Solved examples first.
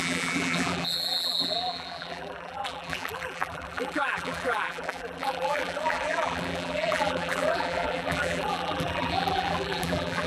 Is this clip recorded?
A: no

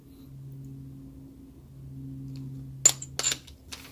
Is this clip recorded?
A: yes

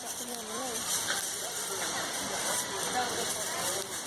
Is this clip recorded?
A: no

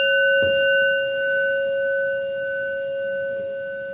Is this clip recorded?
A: yes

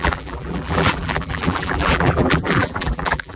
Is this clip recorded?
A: no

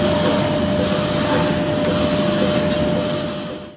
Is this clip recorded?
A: yes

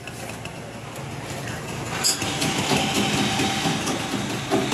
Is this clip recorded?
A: yes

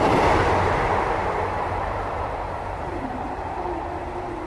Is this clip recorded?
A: no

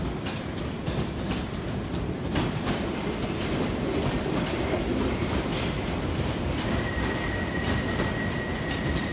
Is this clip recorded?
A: no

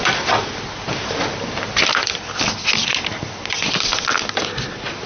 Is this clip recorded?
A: yes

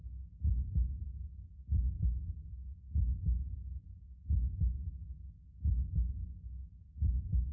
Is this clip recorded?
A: yes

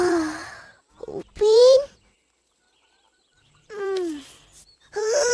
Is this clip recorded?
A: no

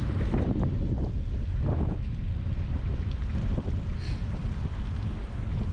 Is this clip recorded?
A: yes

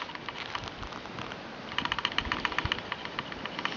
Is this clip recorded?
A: yes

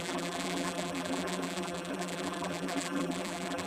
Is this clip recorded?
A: no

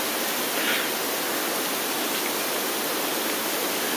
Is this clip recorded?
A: yes